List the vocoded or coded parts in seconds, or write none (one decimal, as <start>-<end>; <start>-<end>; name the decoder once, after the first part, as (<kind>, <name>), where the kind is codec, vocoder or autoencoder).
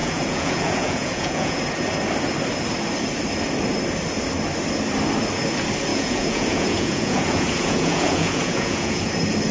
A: 0.0-1.6 (vocoder, Vocos); 5.9-9.1